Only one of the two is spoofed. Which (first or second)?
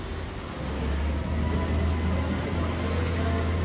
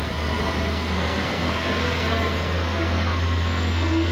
second